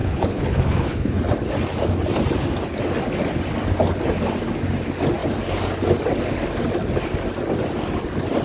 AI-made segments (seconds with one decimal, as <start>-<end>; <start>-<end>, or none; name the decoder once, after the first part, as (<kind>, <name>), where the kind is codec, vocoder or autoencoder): 0.0-1.2 (codec, HILCodec)